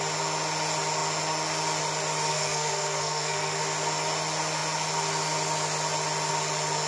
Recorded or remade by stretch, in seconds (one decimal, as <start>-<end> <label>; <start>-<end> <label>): 0.0-2.3 recorded; 2.3-3.6 remade; 3.6-6.9 recorded